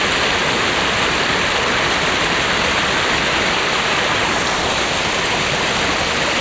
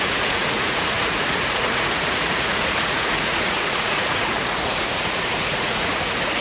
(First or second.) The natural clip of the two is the first